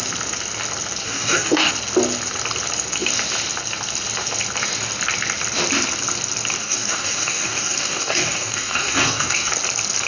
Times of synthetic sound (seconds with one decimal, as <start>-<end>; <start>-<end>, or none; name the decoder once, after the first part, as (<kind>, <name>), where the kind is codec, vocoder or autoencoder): 1.0-1.7 (codec, DAC); 6.6-9.5